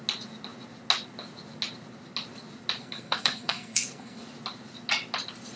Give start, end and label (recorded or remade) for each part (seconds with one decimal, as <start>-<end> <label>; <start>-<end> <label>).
0.0-2.8 recorded; 2.8-4.2 remade; 4.2-5.6 recorded